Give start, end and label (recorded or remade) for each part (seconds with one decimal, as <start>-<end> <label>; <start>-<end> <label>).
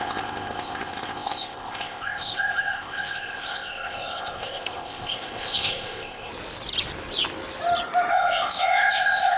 0.0-6.3 remade; 6.3-8.1 recorded; 8.1-9.4 remade